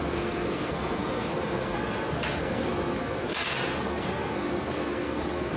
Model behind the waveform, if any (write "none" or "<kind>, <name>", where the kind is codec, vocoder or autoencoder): codec, SNAC